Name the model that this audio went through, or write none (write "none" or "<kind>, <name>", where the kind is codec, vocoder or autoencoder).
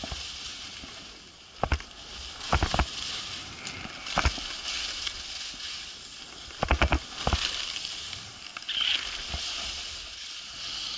none